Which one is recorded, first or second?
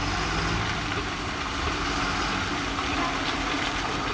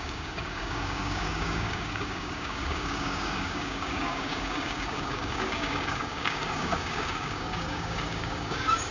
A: first